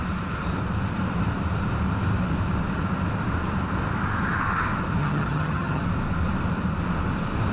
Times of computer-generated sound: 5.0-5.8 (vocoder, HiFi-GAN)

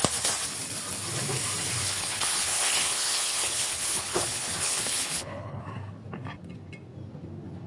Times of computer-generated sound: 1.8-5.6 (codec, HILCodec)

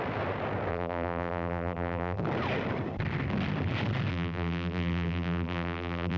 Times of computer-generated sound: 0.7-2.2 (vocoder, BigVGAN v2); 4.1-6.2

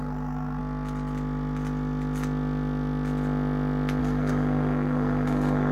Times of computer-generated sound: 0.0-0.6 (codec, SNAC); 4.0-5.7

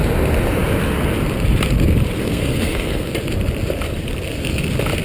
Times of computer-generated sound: 2.2-3.1 (codec, SNAC)

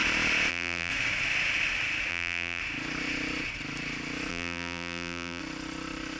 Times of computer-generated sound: 0.5-0.9 (vocoder, BigVGAN v2); 2.1-2.6; 4.3-5.4

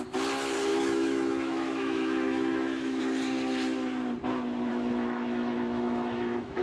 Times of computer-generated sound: 0.7-3.0 (autoencoder, DAC-VAE); 4.7-6.6